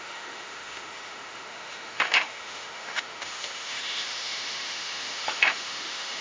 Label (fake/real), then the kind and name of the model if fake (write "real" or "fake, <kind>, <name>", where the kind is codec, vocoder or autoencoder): fake, autoencoder, DAC-VAE